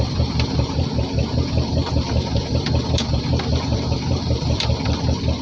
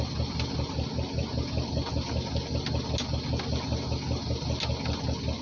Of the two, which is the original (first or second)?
second